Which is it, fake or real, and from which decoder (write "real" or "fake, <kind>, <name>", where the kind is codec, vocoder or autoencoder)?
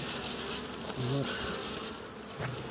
real